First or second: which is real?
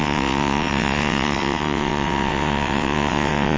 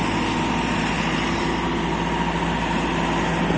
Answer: second